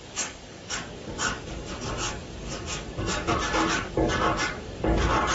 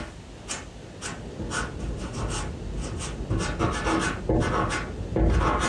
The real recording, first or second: second